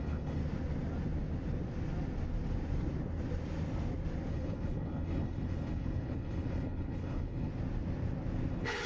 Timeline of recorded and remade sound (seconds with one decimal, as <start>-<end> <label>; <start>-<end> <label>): 0.0-0.4 remade; 0.4-4.3 recorded; 4.3-7.5 remade; 7.5-8.5 recorded; 8.5-8.9 remade